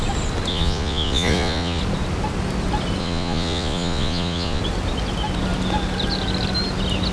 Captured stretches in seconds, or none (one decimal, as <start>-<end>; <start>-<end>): 0.0-0.5; 1.8-3.0; 4.6-7.1